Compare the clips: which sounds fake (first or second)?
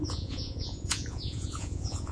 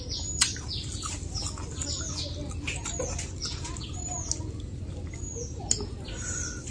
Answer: first